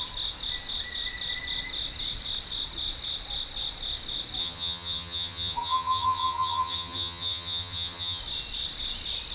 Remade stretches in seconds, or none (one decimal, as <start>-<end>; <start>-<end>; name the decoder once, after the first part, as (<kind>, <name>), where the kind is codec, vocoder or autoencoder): 4.4-8.2 (vocoder, HiFi-GAN)

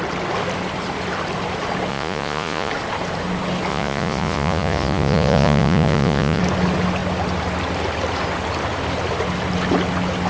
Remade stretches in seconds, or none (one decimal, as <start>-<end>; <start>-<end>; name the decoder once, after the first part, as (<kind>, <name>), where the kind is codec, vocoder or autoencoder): 1.9-2.7 (vocoder, Vocos); 3.7-6.4